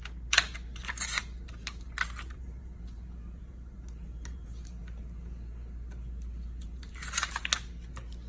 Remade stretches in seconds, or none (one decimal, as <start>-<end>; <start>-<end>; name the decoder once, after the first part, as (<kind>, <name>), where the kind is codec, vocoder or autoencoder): 0.8-4.8 (vocoder, BigVGAN v2); 6.6-7.4